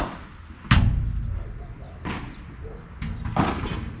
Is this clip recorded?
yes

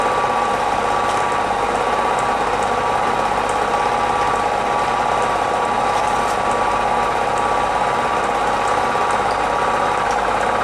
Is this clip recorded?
yes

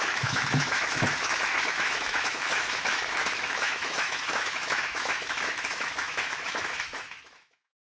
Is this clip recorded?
no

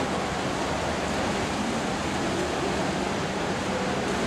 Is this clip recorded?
yes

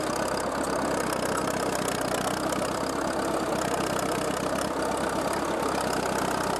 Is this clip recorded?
yes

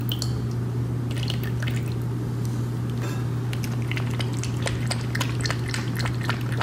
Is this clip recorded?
yes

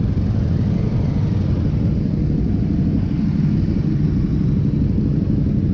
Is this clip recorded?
yes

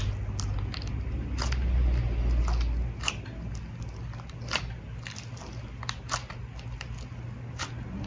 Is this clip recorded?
yes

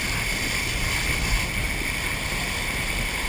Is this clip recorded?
yes